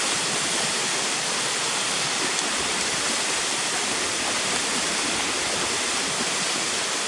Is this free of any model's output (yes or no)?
no